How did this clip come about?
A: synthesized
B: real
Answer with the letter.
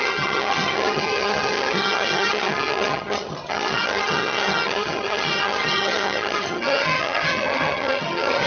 A